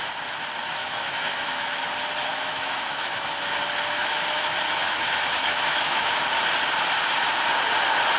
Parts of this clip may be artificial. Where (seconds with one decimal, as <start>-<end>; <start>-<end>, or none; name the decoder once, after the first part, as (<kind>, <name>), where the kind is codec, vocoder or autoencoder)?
0.8-1.8 (autoencoder, DAC-VAE); 2.3-3.4; 4.0-6.1